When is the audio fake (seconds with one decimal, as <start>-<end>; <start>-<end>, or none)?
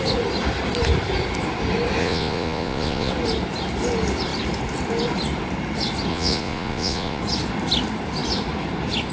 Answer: 2.0-3.1; 6.1-7.2